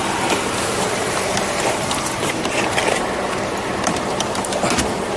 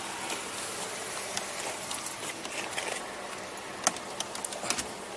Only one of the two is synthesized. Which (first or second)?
first